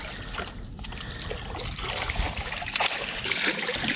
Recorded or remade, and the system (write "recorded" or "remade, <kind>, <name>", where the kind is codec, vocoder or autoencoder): recorded